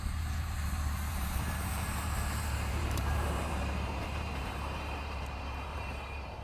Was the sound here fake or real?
fake